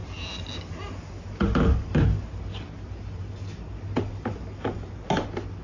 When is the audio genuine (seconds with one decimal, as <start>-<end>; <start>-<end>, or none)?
0.0-5.6